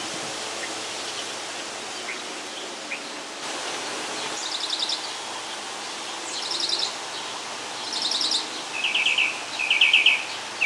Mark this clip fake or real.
real